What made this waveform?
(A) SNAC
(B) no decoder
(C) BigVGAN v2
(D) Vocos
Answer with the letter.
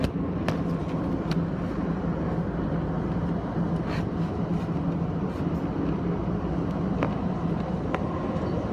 B